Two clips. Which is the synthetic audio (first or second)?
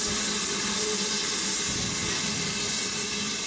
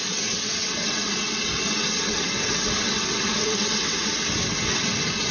second